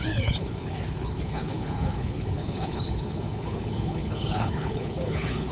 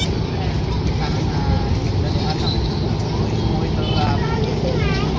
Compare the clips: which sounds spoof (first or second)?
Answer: first